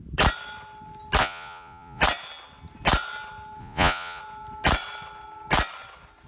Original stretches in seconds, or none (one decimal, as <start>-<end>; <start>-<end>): 0.0-1.2; 2.0-3.6; 4.2-6.3